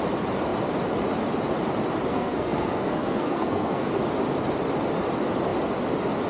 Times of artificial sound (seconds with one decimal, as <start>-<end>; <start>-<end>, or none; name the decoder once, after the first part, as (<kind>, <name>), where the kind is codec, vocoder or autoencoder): 2.1-3.9 (codec, SNAC)